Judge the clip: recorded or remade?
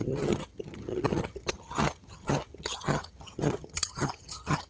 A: remade